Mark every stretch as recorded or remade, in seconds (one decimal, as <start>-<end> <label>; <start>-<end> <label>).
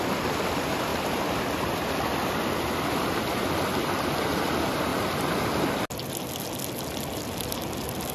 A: 0.0-8.1 recorded